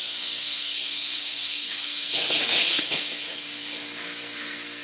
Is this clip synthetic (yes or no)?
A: yes